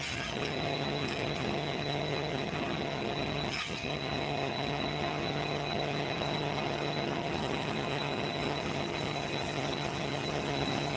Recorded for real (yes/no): no